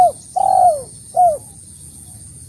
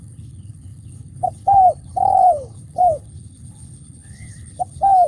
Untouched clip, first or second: first